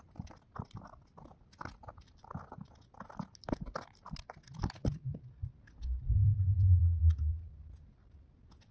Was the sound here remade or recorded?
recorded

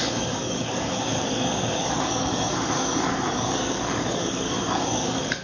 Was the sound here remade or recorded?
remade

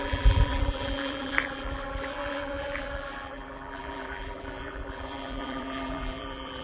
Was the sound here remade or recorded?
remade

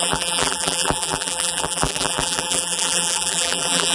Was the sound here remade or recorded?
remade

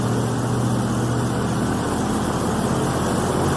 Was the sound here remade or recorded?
recorded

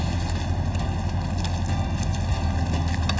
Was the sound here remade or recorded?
recorded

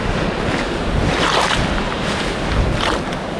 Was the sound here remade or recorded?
recorded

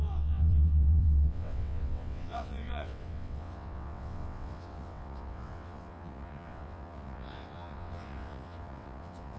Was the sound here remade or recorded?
remade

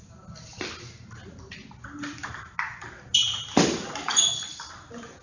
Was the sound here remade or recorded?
recorded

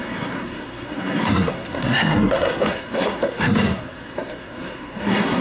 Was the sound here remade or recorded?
remade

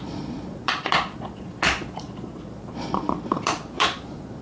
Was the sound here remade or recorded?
remade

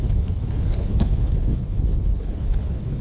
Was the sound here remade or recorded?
remade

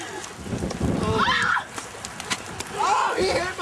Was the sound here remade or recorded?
recorded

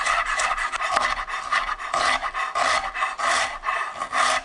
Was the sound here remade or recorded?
recorded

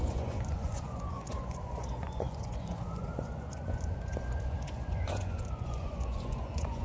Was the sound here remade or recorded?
remade